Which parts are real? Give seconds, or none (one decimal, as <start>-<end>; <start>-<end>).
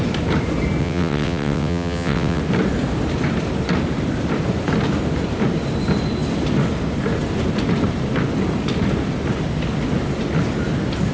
0.0-0.8; 2.4-11.1